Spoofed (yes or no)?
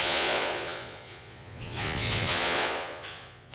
yes